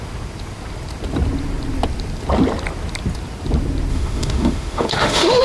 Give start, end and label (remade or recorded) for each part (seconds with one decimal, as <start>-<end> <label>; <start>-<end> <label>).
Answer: 0.0-3.9 recorded; 3.9-5.4 remade